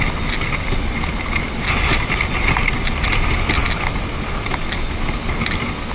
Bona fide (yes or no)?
yes